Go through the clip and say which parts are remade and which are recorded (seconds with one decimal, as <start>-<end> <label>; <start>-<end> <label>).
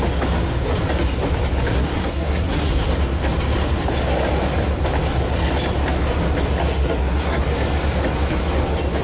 0.0-1.7 recorded; 1.7-2.7 remade; 2.7-6.7 recorded; 6.7-7.4 remade; 7.4-9.0 recorded